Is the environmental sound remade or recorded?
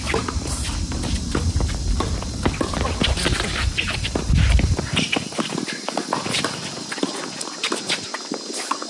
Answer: recorded